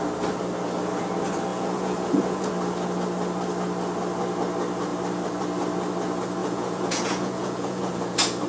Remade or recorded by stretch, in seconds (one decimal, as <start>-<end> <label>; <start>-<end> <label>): 0.0-1.5 recorded; 1.5-2.5 remade; 2.5-6.4 recorded; 6.4-7.9 remade; 7.9-8.5 recorded